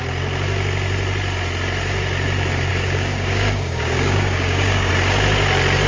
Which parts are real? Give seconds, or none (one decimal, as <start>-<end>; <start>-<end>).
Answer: 0.0-2.7; 4.9-5.9